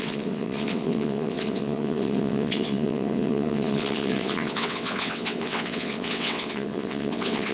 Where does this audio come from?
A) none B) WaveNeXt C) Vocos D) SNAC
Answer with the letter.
B